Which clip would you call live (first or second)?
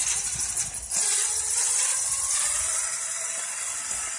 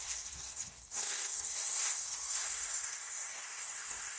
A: first